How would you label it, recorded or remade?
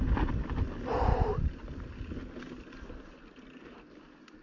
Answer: recorded